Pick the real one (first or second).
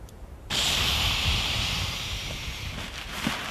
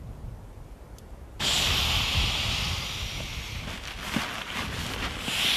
second